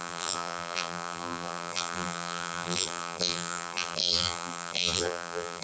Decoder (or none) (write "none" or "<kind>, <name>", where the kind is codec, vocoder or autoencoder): vocoder, BigVGAN v2